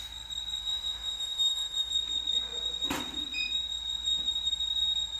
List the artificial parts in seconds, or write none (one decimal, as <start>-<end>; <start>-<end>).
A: 0.6-1.9